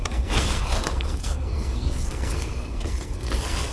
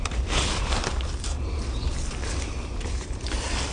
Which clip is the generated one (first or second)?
first